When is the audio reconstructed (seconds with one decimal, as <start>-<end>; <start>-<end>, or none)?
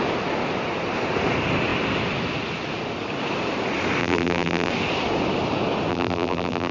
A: 4.0-4.7; 5.9-6.7